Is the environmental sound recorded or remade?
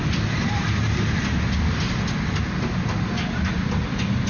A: recorded